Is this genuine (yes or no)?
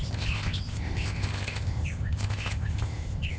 no